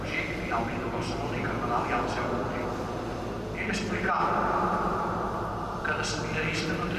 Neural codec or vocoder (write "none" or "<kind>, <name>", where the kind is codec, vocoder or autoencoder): none